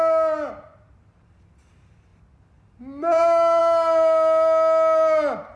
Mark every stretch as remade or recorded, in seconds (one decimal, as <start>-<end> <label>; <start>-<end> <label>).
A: 0.0-5.6 recorded